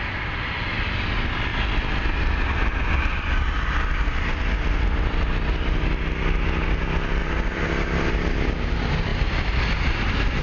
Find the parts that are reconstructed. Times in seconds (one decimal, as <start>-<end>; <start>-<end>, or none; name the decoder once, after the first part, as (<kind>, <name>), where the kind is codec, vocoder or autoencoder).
7.2-8.1 (vocoder, BigVGAN v2)